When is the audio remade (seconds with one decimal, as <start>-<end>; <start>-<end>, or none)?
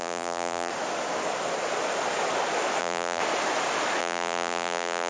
0.0-0.7; 2.8-3.2; 4.0-5.1